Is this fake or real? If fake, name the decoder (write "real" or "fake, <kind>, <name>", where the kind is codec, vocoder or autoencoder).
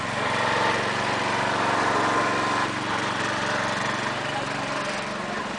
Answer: real